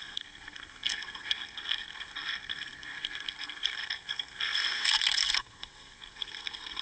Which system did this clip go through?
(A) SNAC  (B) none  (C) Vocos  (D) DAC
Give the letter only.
A